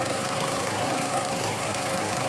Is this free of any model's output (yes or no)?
no